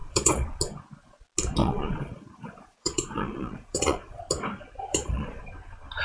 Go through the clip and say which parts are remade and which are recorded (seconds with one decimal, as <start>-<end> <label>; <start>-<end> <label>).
0.0-0.6 remade; 0.6-1.6 recorded; 1.6-4.2 remade; 4.2-4.9 recorded; 4.9-5.4 remade; 5.4-6.0 recorded